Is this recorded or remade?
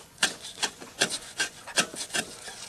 remade